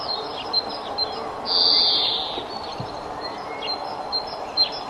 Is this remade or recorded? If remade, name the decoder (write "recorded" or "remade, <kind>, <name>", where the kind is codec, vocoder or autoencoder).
recorded